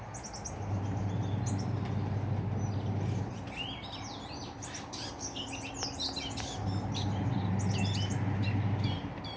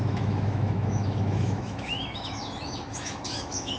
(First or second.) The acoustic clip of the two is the first